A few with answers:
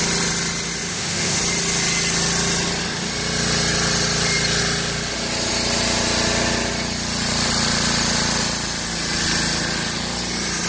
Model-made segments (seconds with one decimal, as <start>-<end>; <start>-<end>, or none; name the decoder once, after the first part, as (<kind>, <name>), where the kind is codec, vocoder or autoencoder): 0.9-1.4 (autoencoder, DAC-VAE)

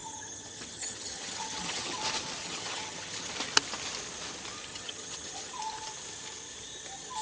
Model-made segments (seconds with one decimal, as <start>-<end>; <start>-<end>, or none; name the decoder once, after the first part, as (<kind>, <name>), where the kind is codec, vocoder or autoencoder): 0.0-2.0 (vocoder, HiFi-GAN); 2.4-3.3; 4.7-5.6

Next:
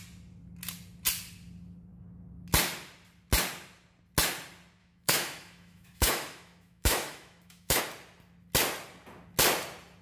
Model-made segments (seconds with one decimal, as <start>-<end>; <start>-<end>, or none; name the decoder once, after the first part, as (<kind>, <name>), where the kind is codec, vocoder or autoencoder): 4.8-7.8 (autoencoder, DAC-VAE)